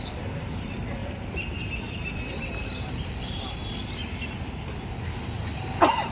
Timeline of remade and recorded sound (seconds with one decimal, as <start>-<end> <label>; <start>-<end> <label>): 0.0-1.0 recorded; 1.0-1.9 remade; 1.9-6.1 recorded